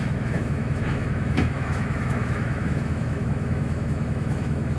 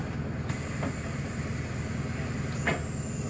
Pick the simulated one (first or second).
first